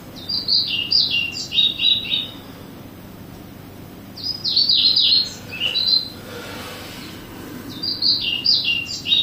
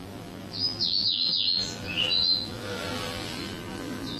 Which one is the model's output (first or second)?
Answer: second